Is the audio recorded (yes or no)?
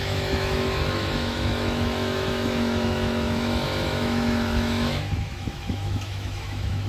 no